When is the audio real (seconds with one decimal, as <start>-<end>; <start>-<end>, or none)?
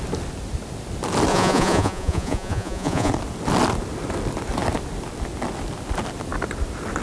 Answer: 0.0-1.3; 3.1-7.0